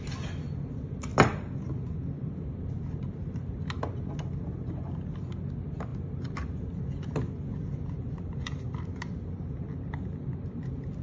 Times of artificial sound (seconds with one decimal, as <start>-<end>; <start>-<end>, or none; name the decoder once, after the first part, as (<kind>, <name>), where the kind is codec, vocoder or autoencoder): 7.5-8.9 (vocoder, BigVGAN v2)